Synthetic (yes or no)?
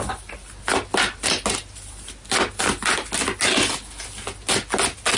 no